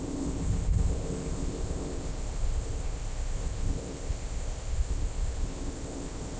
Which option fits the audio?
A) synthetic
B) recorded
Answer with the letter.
A